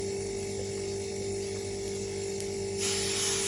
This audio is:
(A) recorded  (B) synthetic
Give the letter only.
A